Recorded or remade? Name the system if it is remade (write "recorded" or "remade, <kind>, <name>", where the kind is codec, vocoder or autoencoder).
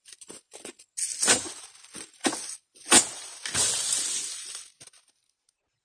recorded